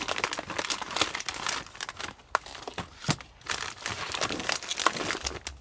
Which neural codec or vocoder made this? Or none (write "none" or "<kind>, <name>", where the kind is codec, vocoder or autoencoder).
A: none